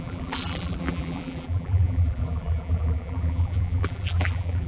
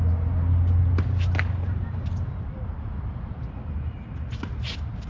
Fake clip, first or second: first